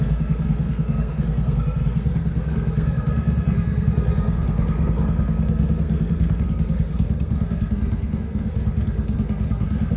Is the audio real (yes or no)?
no